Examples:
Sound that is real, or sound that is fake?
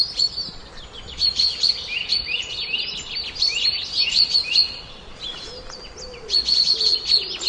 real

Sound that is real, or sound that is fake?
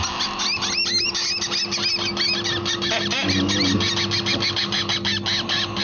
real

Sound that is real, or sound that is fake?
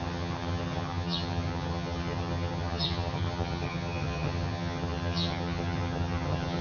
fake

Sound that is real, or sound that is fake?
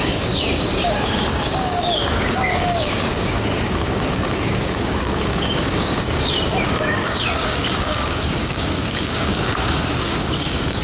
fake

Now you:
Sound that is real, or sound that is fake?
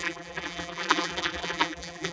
fake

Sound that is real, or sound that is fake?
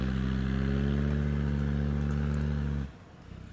real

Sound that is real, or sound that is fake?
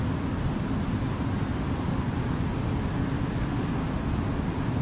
real